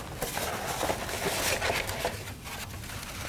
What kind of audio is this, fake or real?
real